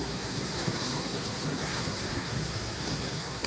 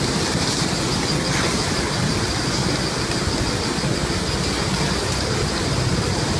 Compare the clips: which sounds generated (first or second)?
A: first